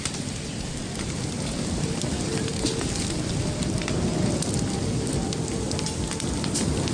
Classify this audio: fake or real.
real